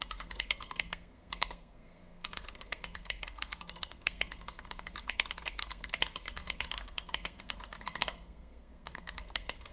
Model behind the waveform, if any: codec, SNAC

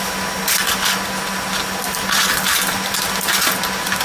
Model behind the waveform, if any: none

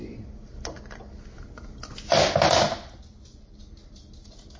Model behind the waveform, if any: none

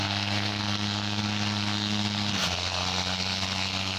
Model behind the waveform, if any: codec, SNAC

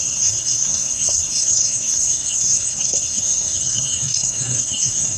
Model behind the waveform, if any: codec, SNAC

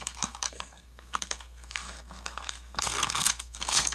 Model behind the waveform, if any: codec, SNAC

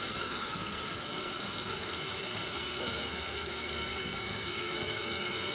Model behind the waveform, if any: codec, SNAC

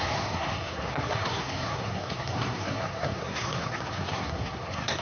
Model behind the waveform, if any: codec, SNAC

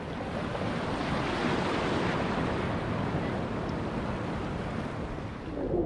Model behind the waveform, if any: none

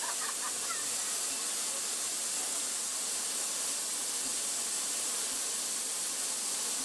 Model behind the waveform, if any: none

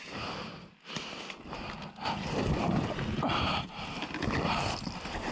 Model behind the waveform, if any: none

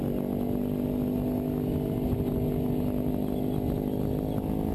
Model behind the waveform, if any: none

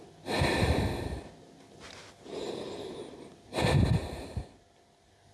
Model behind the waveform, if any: none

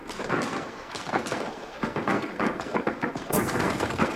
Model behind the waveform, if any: codec, SNAC